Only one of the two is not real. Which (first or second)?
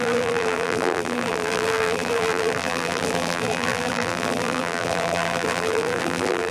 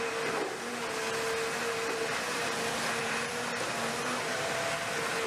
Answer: first